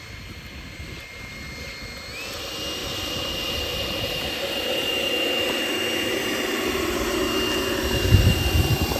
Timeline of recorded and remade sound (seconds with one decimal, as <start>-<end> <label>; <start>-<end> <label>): 0.0-2.8 recorded; 2.8-5.1 remade; 5.1-9.0 recorded